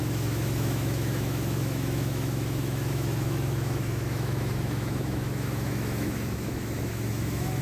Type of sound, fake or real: fake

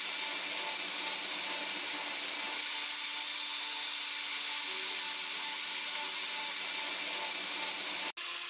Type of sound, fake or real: real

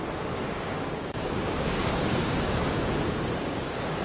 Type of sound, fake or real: fake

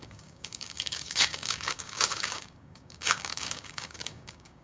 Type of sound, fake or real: fake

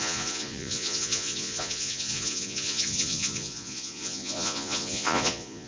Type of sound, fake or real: fake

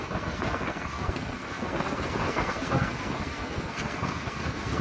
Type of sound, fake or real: fake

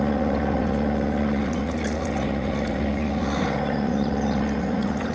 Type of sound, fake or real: fake